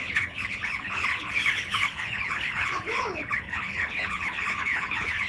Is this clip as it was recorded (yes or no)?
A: no